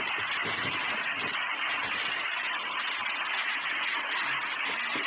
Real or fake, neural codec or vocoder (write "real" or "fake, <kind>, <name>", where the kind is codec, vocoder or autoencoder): real